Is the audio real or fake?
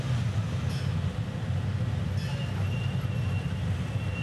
real